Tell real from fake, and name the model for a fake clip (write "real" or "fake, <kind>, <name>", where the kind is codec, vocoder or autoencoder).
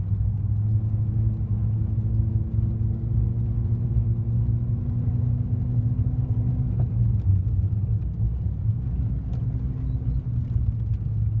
real